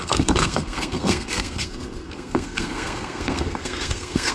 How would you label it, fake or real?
fake